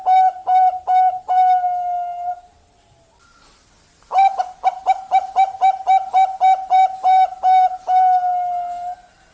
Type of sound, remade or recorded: recorded